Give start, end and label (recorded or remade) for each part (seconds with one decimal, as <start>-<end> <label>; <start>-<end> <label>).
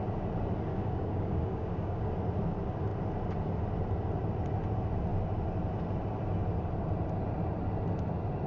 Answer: 0.0-0.7 recorded; 0.7-2.1 remade; 2.1-8.5 recorded